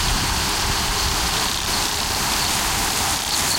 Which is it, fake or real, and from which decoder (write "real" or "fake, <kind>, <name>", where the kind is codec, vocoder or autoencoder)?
real